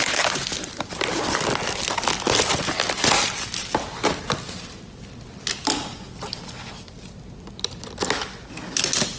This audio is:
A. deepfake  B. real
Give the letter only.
B